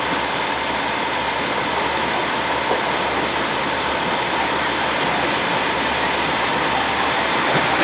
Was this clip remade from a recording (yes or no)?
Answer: no